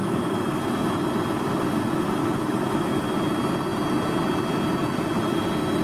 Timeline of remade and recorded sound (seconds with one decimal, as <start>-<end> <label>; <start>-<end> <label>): 0.0-0.6 remade; 0.6-2.2 recorded; 2.2-3.0 remade; 3.0-5.8 recorded